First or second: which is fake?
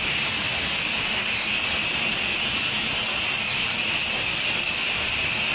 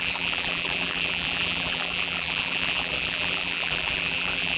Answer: second